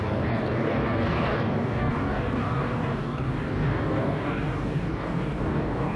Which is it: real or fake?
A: fake